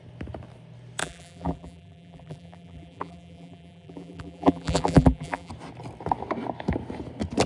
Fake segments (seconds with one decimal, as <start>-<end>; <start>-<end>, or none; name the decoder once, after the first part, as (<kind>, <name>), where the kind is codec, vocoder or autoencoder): 1.0-5.5 (vocoder, BigVGAN v2)